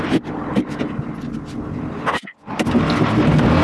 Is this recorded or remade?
recorded